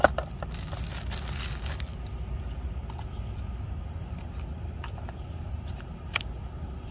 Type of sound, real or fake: real